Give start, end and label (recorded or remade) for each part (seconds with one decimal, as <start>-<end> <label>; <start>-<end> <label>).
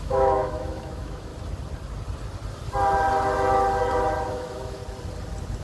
0.0-1.3 remade; 1.3-4.3 recorded; 4.3-4.8 remade; 4.8-5.6 recorded